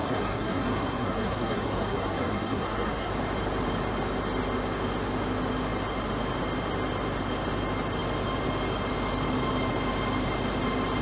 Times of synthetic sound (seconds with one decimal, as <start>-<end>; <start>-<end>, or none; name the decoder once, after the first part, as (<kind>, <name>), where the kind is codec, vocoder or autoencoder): 0.0-3.1 (codec, SNAC)